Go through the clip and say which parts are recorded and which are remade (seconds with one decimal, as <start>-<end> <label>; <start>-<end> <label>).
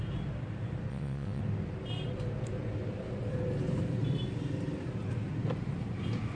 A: 0.0-0.9 recorded; 0.9-1.4 remade; 1.4-6.4 recorded